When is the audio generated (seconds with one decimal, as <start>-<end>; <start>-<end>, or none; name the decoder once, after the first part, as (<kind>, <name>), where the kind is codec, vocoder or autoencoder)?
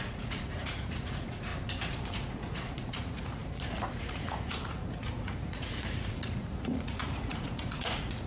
0.0-1.5 (vocoder, Vocos); 2.1-8.3